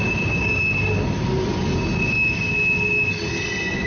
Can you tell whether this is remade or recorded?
recorded